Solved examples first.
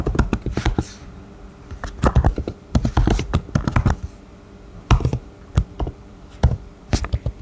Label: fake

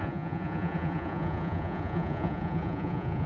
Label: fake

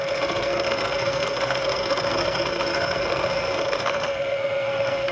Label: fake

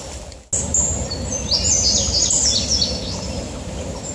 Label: real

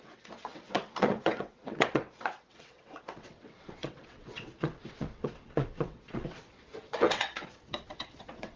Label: fake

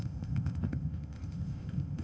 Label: fake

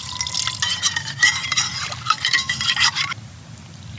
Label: real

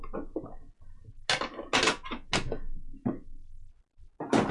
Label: real